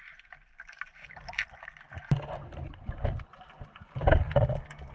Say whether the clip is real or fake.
real